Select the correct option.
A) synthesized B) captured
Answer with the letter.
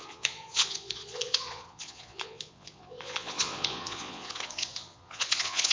A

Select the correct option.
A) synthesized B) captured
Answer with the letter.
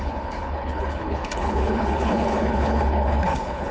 A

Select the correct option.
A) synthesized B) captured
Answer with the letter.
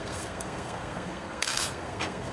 A